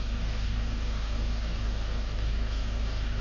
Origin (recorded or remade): remade